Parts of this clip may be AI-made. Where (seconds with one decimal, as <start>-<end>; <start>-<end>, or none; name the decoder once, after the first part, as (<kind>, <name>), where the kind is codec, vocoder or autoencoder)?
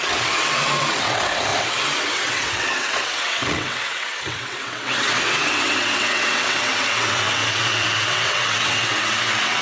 0.0-9.6 (vocoder, WaveNeXt)